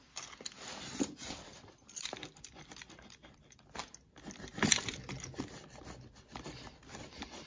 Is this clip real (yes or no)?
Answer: yes